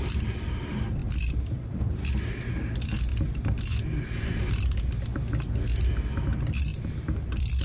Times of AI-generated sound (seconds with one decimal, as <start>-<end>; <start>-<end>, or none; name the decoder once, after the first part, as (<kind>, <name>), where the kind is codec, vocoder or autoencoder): 1.0-1.8 (vocoder, BigVGAN v2); 6.7-7.6